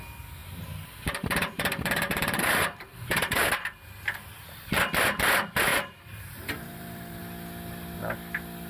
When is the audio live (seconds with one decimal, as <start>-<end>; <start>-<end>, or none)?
0.0-0.4; 3.5-5.7; 7.2-8.7

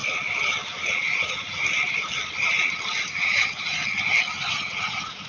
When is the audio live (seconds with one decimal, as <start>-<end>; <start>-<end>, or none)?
0.0-0.9; 1.6-3.0; 3.8-4.5

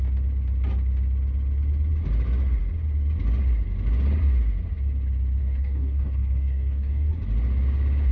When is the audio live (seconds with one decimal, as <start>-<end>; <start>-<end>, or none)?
0.0-5.4; 7.1-8.1

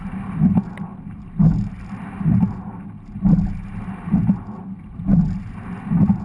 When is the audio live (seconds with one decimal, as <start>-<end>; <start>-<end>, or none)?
0.0-6.2

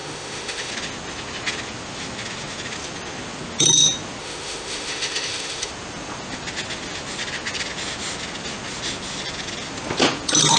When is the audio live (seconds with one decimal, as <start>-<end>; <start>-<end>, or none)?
0.7-4.2; 5.7-10.6

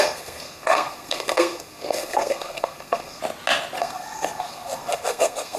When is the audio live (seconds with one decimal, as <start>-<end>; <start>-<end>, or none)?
3.2-3.8

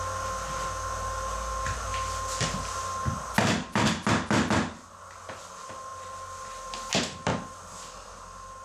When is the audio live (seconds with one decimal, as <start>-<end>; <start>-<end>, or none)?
0.0-8.6